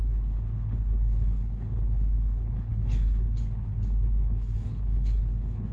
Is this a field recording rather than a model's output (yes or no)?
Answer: no